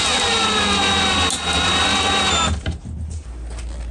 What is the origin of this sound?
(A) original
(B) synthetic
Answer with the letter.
A